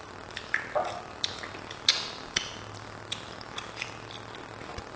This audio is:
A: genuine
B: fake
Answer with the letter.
A